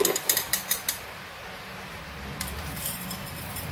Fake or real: fake